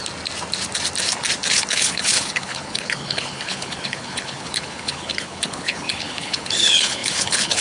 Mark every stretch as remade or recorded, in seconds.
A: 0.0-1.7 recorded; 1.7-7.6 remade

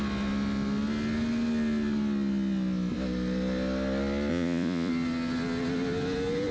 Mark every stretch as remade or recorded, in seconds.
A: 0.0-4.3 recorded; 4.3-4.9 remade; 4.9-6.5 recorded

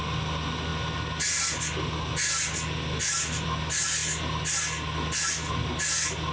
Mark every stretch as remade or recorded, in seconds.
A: 0.0-6.3 recorded